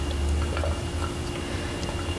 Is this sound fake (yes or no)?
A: no